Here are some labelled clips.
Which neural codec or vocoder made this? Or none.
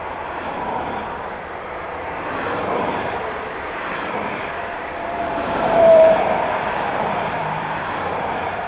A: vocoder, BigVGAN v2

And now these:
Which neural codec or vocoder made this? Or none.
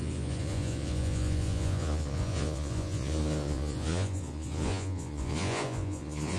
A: vocoder, Vocos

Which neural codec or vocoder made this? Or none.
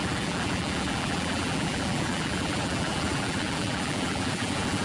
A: vocoder, BigVGAN v2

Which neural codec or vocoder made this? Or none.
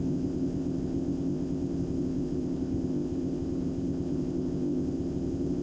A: codec, ZipCodec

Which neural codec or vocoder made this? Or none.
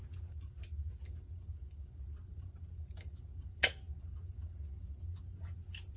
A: none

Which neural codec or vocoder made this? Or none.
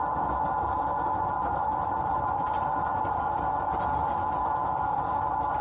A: none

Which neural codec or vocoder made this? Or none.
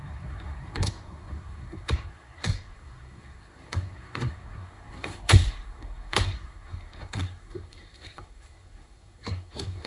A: codec, SNAC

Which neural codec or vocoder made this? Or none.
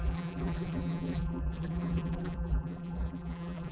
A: vocoder, BigVGAN v2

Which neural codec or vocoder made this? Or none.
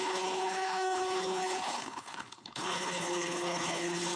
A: codec, HILCodec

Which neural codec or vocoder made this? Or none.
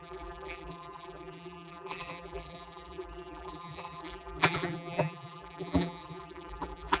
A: vocoder, BigVGAN v2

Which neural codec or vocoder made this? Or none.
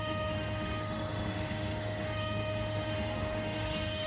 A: autoencoder, DAC-VAE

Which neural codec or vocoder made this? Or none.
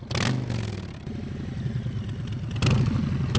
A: none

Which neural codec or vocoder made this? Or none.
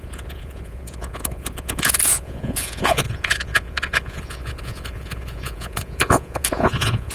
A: vocoder, Vocos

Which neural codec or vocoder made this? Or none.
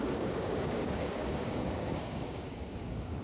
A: codec, DAC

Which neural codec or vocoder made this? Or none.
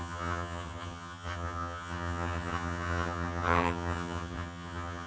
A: vocoder, HiFi-GAN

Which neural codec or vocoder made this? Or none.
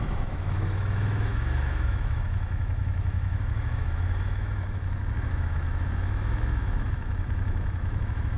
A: autoencoder, DAC-VAE